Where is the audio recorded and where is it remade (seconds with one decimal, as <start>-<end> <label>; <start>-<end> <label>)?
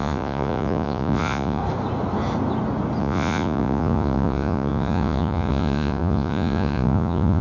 0.0-1.6 remade; 1.6-3.0 recorded; 3.0-7.4 remade